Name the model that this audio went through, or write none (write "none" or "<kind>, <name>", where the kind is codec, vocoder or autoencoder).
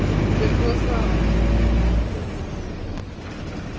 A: none